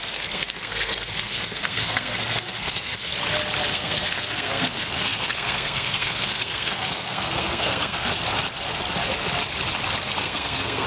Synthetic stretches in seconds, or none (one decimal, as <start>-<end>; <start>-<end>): 0.0-3.1; 3.7-8.1; 10.2-10.9